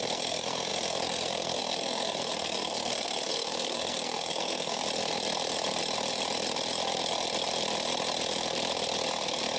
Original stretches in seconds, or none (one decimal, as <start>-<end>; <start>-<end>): 4.8-9.6